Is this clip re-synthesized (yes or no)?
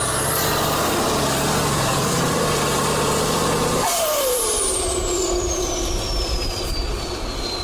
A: yes